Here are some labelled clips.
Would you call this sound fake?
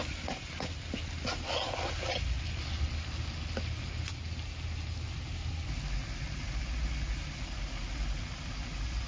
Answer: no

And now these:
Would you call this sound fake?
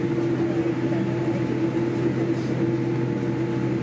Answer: no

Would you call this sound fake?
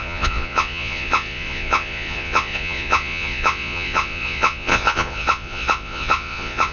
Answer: yes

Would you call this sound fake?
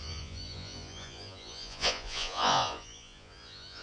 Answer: yes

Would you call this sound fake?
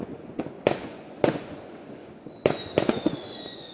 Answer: yes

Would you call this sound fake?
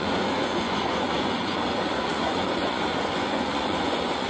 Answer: yes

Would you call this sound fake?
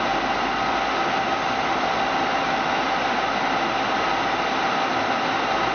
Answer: no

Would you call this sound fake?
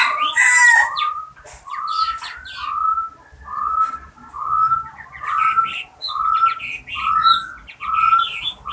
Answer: no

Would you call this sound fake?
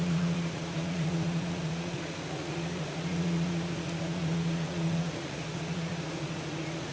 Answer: yes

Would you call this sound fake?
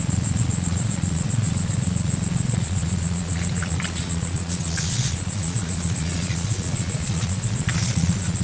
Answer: yes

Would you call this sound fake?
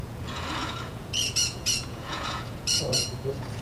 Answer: yes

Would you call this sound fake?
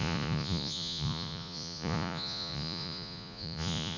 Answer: yes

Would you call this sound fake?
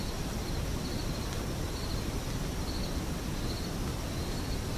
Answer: no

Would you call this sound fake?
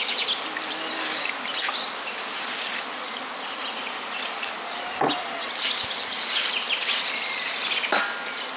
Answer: no